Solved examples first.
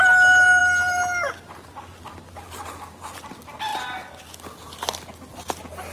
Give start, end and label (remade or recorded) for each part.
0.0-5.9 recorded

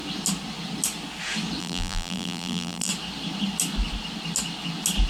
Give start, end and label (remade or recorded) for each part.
0.0-1.6 recorded; 1.6-2.9 remade; 2.9-5.1 recorded

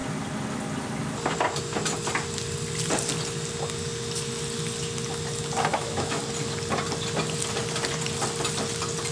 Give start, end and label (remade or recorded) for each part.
0.0-5.7 recorded; 5.7-6.2 remade; 6.2-9.1 recorded

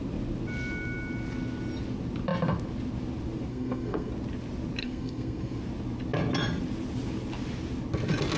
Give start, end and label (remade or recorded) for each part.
0.0-3.5 recorded; 3.5-4.1 remade; 4.1-4.8 recorded; 4.8-5.6 remade; 5.6-8.4 recorded